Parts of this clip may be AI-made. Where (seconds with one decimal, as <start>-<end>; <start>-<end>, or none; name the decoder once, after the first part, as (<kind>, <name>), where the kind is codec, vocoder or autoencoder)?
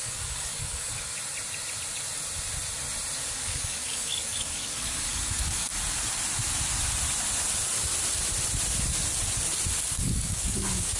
0.0-1.2 (codec, DAC); 3.3-5.7; 9.9-11.0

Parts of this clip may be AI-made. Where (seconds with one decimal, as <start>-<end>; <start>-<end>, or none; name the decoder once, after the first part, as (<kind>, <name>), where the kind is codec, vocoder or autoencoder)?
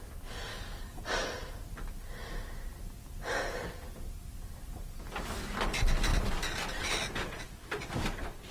0.5-1.0 (codec, DAC)